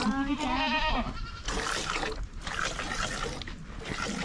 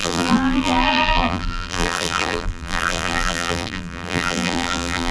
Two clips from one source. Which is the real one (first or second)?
first